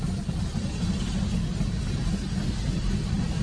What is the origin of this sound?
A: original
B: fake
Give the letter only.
A